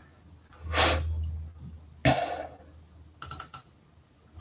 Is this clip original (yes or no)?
yes